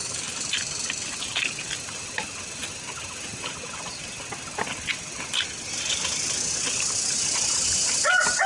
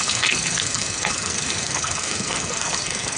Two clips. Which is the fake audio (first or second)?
second